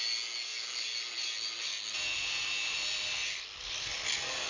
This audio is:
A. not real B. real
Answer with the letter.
B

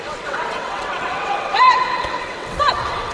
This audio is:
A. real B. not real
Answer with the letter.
B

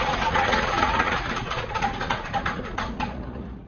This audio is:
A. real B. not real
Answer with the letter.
B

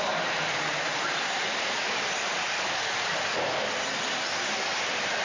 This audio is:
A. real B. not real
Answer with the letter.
A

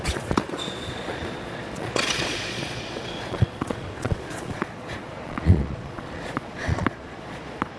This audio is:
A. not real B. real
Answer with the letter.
A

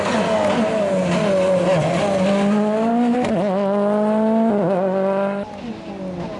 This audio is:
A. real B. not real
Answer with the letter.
A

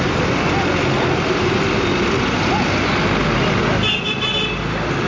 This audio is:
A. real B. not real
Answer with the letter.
A